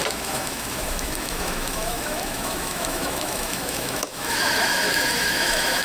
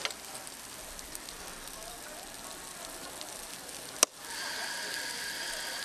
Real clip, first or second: second